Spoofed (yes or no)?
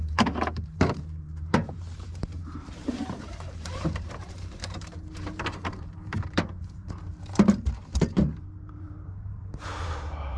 yes